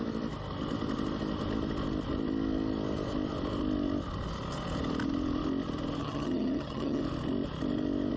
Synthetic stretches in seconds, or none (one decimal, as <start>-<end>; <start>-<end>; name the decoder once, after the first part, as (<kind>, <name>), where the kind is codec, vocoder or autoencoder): 6.0-7.0 (vocoder, HiFi-GAN)